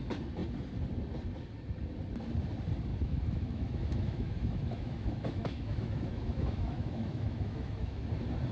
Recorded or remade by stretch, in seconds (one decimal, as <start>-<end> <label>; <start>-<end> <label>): 0.0-2.9 recorded; 2.9-8.0 remade; 8.0-8.5 recorded